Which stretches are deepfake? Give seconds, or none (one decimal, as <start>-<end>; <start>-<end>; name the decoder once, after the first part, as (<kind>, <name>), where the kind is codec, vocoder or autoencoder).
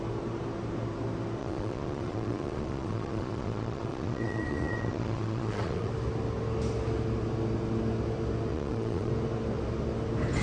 1.4-5.9 (vocoder, Vocos); 8.5-9.1